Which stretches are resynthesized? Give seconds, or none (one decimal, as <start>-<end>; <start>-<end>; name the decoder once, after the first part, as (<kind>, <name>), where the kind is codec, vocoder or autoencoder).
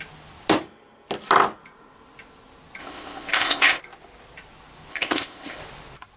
2.8-3.8 (codec, ZipCodec); 4.9-5.6